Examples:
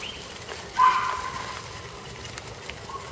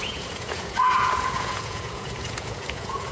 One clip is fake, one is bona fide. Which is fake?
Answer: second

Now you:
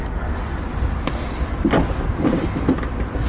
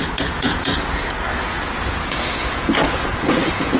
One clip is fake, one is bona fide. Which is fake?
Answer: second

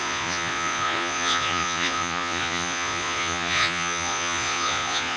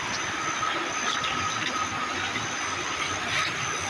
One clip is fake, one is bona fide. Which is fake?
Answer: first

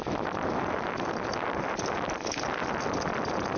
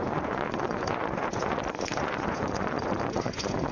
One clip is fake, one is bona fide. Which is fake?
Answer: second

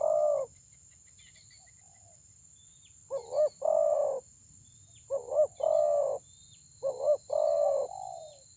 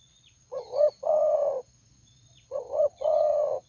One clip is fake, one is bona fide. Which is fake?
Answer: second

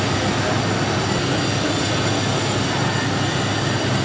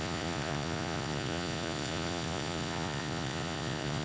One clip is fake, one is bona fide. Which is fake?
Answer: second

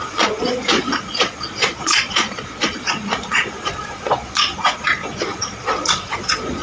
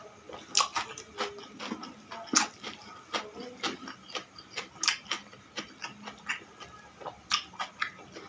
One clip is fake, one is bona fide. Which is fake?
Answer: first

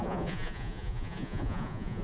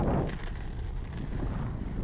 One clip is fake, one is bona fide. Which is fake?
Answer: first